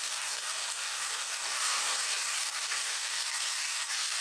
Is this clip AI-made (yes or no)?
yes